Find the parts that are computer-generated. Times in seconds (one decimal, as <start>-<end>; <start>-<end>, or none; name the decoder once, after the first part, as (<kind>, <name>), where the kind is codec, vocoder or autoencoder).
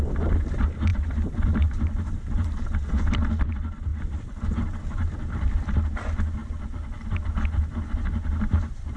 0.9-3.3 (vocoder, BigVGAN v2); 3.9-5.1